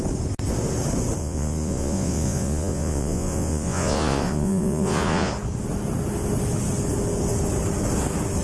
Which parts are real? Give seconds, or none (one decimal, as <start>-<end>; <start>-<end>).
0.0-1.2; 5.3-8.4